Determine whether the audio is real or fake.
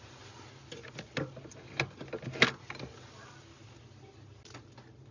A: real